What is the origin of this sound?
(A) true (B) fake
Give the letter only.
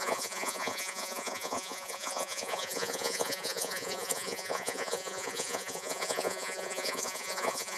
B